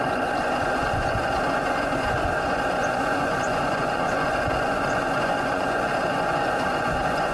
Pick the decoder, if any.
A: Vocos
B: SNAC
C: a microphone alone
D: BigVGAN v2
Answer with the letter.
A